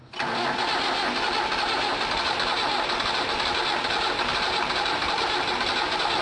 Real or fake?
real